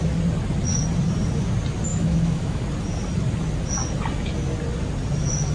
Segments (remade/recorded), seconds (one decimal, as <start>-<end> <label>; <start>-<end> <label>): 0.0-1.9 recorded; 1.9-2.6 remade; 2.6-5.5 recorded